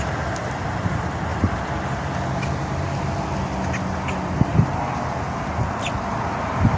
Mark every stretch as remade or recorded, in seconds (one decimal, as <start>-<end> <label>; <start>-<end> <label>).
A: 0.0-1.3 recorded; 1.3-2.4 remade; 2.4-6.8 recorded

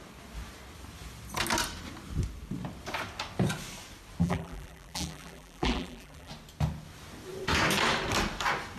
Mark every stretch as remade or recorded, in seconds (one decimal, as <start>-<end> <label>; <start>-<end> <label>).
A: 0.0-4.2 recorded; 4.2-6.3 remade; 6.3-8.8 recorded

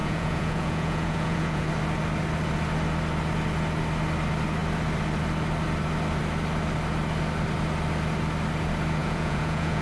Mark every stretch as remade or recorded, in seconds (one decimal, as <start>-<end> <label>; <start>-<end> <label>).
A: 0.0-1.7 remade; 1.7-9.0 recorded; 9.0-9.8 remade

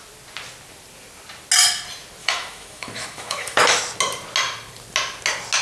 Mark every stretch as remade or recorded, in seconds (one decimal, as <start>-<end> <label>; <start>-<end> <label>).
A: 0.0-2.2 recorded; 2.2-3.8 remade; 3.8-5.6 recorded

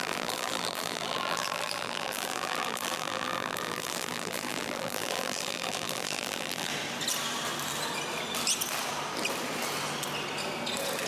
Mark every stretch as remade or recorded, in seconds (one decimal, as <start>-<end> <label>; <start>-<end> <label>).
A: 0.0-6.7 remade; 6.7-11.1 recorded

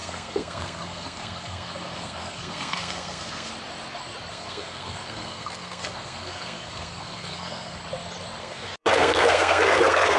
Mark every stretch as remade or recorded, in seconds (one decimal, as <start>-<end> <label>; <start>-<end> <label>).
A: 0.0-3.5 remade; 3.5-4.3 recorded; 4.3-7.8 remade; 7.8-8.4 recorded; 8.4-10.2 remade

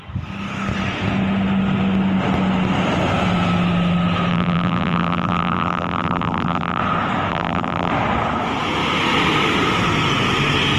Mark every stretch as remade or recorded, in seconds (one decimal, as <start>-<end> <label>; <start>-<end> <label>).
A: 0.0-4.3 recorded; 4.3-6.8 remade; 6.8-7.3 recorded; 7.3-7.9 remade; 7.9-10.8 recorded